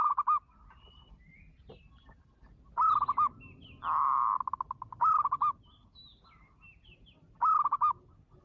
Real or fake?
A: real